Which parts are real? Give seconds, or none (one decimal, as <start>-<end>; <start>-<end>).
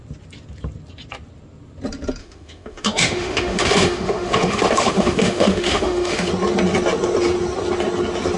0.0-2.2; 6.3-8.4